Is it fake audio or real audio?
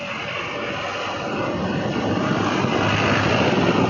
real